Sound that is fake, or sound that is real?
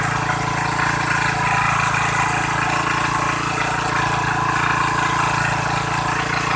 real